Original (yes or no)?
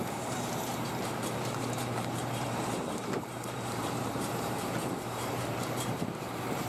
no